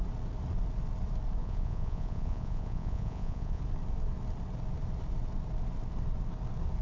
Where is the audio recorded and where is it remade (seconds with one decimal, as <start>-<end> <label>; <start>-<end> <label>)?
0.0-1.4 recorded; 1.4-3.6 remade; 3.6-6.8 recorded